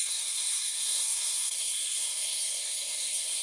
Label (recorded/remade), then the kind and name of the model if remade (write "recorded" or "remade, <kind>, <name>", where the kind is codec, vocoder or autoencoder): remade, codec, SNAC